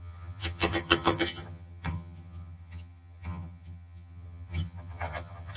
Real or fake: fake